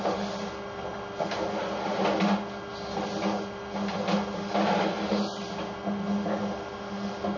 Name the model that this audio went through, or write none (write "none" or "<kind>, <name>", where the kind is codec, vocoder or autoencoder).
none